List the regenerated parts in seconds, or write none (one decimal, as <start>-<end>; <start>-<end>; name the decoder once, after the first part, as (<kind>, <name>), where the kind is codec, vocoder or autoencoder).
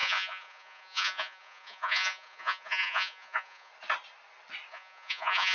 0.0-3.7 (vocoder, Vocos); 4.7-5.5